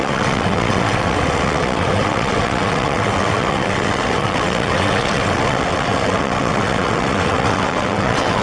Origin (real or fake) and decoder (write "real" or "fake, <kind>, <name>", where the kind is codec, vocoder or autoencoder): fake, vocoder, WaveNeXt